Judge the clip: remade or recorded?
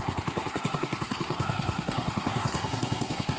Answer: remade